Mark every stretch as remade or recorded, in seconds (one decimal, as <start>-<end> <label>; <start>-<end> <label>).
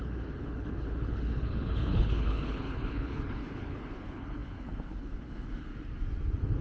0.0-5.7 remade; 5.7-6.6 recorded